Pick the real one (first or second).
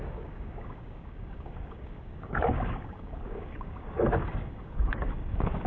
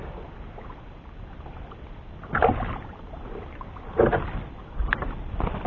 second